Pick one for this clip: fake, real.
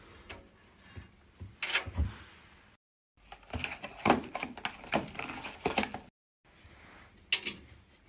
real